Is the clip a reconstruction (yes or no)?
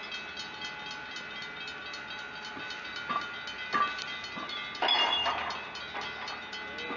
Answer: no